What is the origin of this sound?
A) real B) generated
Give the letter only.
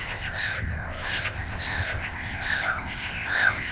B